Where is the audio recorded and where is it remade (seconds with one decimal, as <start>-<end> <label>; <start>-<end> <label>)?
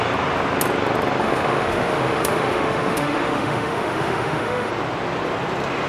0.0-1.2 recorded; 1.2-4.7 remade; 4.7-5.9 recorded